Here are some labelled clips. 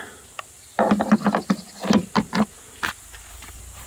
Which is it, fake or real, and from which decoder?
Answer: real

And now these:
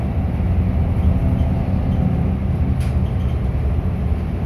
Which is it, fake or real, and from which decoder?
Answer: real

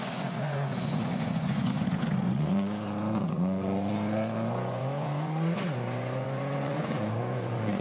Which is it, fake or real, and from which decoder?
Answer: fake, vocoder, Vocos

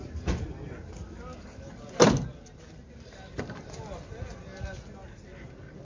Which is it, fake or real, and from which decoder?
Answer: real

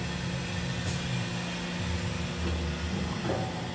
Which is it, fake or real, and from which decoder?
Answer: real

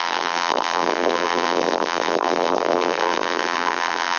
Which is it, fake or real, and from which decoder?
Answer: fake, vocoder, BigVGAN v2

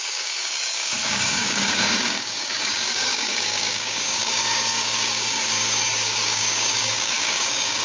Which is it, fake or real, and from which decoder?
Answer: fake, codec, DAC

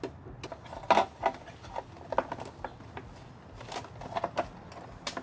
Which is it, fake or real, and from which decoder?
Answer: real